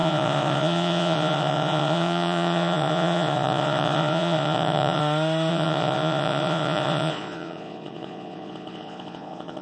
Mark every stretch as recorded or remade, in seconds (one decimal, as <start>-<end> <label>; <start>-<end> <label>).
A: 0.0-5.0 remade; 5.0-5.5 recorded; 5.5-9.6 remade